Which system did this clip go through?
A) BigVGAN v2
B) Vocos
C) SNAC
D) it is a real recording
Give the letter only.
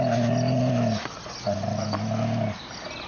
D